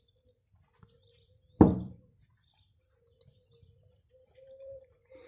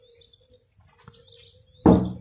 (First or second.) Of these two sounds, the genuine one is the second